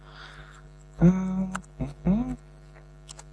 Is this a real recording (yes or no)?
yes